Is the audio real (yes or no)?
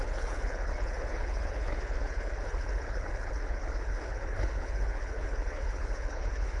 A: no